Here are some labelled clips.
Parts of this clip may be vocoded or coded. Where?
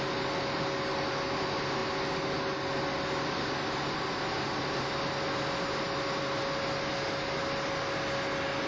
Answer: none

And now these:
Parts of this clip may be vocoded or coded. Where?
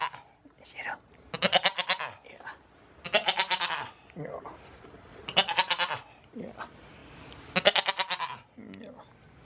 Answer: 0.0-7.0 (vocoder, BigVGAN v2)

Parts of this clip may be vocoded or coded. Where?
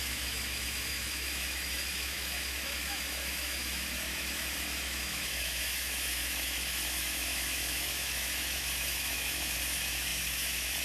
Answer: 0.0-10.8 (autoencoder, DAC-VAE)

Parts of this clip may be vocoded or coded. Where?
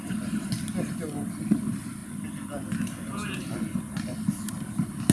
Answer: none